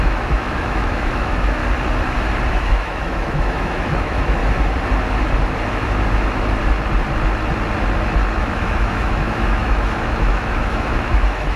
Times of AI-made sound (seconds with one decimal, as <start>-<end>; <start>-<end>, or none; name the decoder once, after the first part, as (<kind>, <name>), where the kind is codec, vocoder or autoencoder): 0.0-1.6 (autoencoder, DAC-VAE); 2.5-4.4; 8.4-11.6